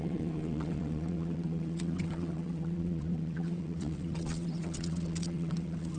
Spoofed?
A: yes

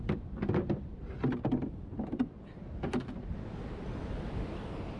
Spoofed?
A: no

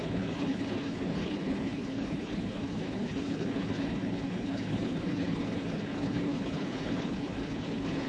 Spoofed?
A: yes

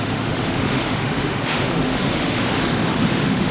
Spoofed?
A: yes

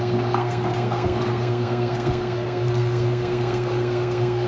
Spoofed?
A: yes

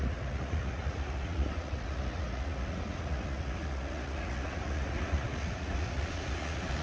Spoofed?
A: yes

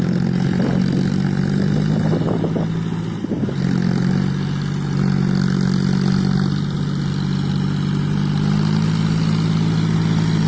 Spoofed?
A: no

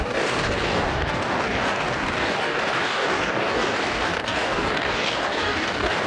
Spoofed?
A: yes